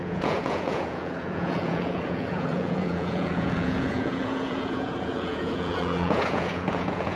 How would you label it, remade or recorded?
remade